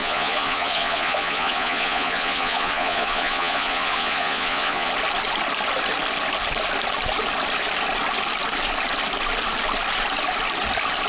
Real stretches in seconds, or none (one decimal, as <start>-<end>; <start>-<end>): 4.9-11.1